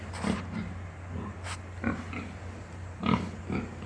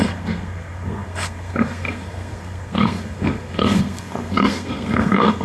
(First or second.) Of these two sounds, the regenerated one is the second